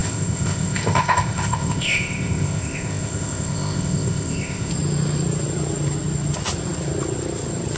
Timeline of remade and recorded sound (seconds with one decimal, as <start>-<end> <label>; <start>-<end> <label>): 0.0-4.7 remade; 4.7-7.8 recorded